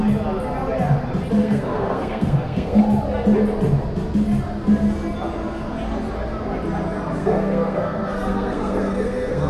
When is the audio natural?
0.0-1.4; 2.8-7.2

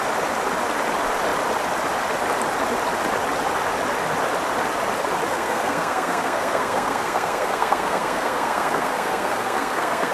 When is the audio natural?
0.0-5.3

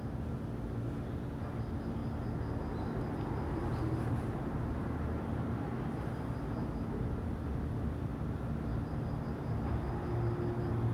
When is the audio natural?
0.0-10.9

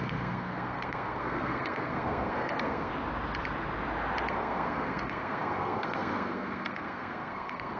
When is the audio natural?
2.9-4.3

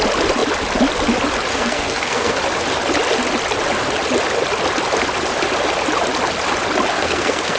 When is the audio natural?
0.0-1.5; 2.4-6.9

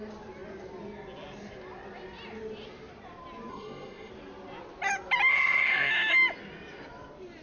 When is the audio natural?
0.0-3.5; 4.1-5.3; 5.9-7.4

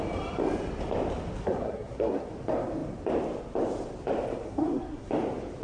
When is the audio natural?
0.0-1.4; 2.3-4.3; 5.1-5.6

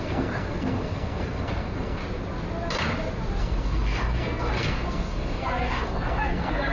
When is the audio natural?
2.0-3.4